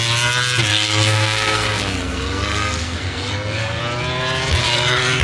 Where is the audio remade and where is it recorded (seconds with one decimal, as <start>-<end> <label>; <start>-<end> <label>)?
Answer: 0.0-0.7 recorded; 0.7-3.8 remade; 3.8-4.6 recorded; 4.6-5.2 remade